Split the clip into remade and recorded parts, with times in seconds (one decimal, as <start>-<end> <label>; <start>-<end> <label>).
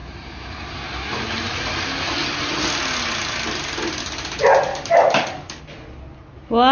0.0-4.7 recorded; 4.7-5.6 remade; 5.6-6.7 recorded